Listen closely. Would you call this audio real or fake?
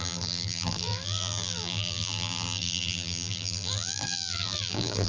fake